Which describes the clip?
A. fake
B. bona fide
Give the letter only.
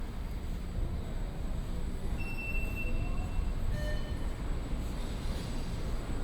B